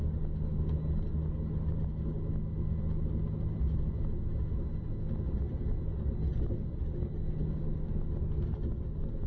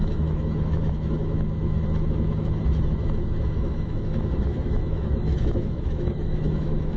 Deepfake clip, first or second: second